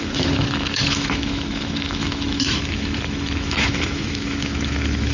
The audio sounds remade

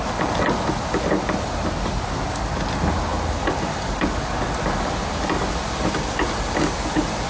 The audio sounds recorded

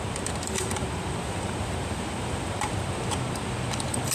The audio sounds remade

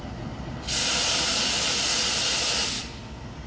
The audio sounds recorded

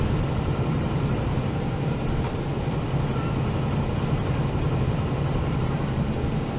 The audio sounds remade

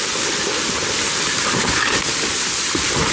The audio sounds recorded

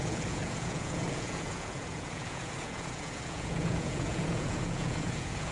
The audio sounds remade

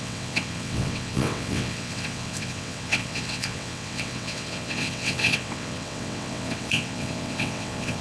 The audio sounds remade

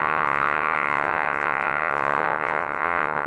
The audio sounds remade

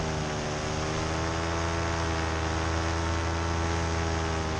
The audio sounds recorded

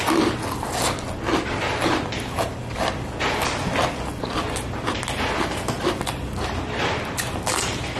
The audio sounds recorded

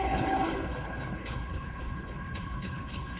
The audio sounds remade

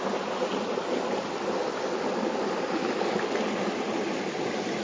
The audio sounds recorded